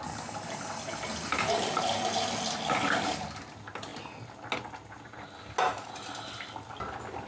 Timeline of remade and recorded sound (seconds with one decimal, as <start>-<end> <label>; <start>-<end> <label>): 0.0-7.3 recorded